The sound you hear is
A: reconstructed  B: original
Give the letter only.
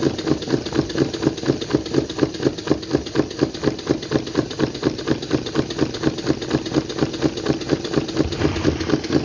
B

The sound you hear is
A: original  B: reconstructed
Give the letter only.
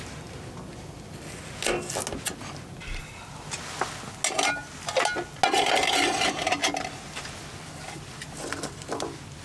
A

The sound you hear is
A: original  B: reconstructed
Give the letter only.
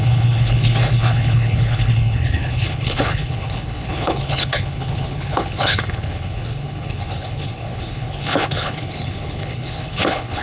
B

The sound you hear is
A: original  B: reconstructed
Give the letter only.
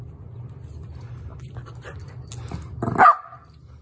A